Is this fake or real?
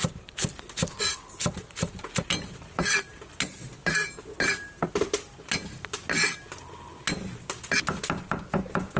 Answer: real